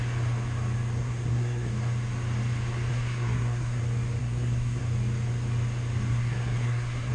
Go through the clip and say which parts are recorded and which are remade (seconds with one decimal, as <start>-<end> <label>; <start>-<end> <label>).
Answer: 0.0-1.0 recorded; 1.0-1.7 remade; 1.7-2.9 recorded; 2.9-3.8 remade; 3.8-4.2 recorded; 4.2-4.8 remade; 4.8-6.1 recorded; 6.1-7.1 remade